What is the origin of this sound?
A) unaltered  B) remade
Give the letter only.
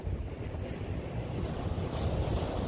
A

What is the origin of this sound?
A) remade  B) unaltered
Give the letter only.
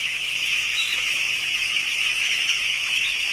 A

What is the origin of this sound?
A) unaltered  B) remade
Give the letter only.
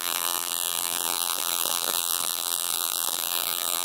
B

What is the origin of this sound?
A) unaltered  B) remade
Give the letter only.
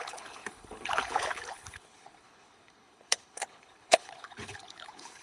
B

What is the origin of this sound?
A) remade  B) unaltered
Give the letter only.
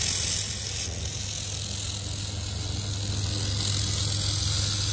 B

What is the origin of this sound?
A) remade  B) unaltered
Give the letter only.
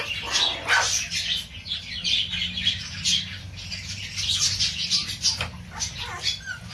B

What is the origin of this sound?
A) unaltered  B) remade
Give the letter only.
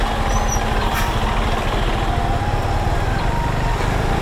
A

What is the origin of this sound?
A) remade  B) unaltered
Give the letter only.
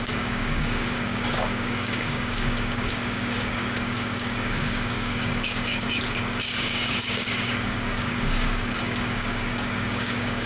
A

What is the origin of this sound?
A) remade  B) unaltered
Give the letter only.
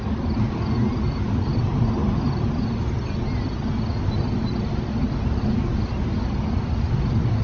B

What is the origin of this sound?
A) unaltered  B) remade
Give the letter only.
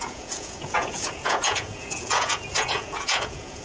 B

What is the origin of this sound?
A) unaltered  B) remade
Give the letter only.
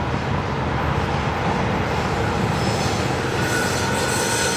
A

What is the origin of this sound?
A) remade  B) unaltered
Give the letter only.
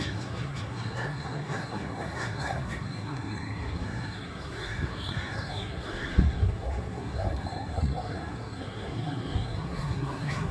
A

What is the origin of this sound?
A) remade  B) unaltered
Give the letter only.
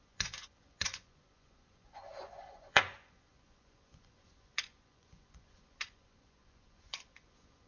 A